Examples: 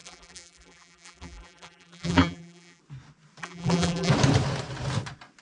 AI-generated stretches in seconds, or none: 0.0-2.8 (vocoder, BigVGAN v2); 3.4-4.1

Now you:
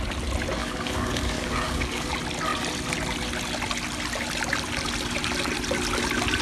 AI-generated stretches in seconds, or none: 0.6-2.1 (codec, DAC)

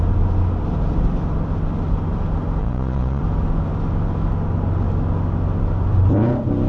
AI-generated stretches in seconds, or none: 2.6-3.2 (vocoder, Vocos)

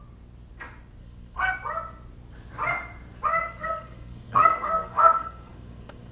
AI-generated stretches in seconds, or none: 1.0-1.5 (codec, SNAC); 3.3-6.1

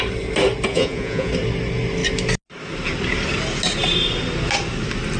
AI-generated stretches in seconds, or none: 0.7-1.3 (vocoder, Vocos)

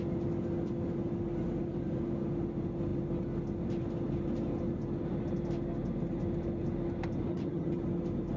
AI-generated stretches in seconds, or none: 7.3-7.8 (vocoder, HiFi-GAN)